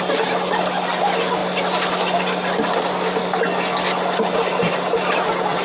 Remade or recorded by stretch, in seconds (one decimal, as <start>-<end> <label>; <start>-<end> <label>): 0.0-5.6 recorded